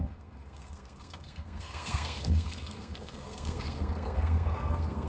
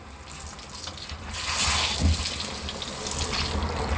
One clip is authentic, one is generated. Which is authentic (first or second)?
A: second